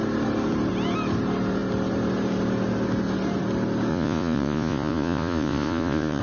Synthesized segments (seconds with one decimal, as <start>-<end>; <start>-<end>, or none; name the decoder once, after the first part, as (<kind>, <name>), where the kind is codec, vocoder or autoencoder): 3.9-6.2 (vocoder, Vocos)